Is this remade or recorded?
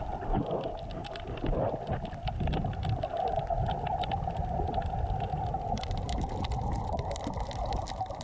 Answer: recorded